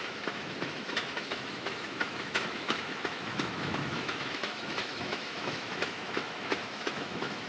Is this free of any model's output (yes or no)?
no